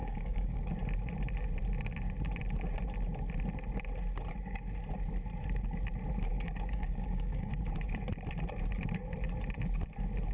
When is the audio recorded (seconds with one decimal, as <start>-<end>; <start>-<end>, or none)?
0.7-6.3; 7.6-10.3